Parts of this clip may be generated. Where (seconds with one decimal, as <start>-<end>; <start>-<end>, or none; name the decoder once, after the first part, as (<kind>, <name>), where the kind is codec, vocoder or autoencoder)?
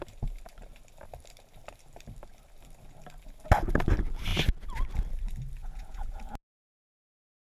5.6-6.2 (vocoder, Vocos)